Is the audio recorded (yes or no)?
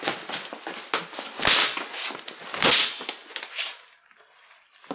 yes